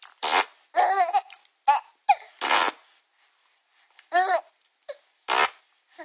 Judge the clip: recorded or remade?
recorded